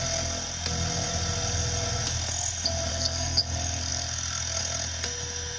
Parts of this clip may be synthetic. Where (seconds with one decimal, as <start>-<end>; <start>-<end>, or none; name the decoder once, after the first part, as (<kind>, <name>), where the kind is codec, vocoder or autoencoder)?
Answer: 2.9-3.4 (codec, SNAC)